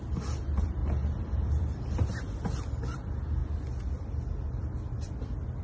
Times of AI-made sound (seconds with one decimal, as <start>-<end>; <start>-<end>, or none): 0.0-3.4; 4.3-5.6